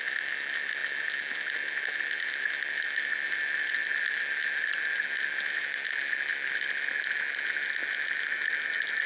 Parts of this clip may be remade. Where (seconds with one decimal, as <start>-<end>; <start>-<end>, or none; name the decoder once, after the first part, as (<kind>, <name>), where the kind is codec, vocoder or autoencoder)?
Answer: none

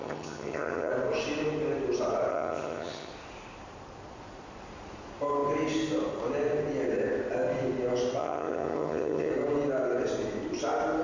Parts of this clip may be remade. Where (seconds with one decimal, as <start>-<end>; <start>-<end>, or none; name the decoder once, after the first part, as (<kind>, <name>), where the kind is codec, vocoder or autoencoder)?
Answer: 0.0-0.9 (vocoder, HiFi-GAN); 2.3-3.1; 8.2-9.3

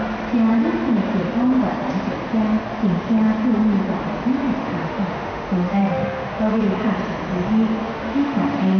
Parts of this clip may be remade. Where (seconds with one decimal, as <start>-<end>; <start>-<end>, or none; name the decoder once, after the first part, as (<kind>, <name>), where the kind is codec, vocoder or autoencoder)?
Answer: 4.6-6.6 (autoencoder, DAC-VAE); 7.8-8.8

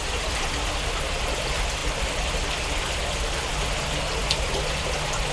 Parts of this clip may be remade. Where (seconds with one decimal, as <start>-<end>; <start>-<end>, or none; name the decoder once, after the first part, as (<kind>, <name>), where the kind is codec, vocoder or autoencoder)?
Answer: none

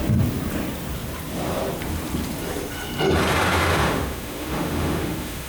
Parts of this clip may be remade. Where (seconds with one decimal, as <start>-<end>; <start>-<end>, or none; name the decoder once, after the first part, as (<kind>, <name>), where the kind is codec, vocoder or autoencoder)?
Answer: 3.5-5.5 (autoencoder, DAC-VAE)

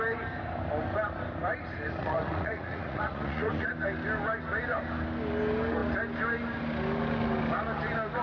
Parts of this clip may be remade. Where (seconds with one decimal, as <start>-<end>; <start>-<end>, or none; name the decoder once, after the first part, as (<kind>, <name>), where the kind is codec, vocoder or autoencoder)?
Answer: 2.0-3.7 (vocoder, Vocos)